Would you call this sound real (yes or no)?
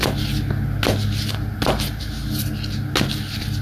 yes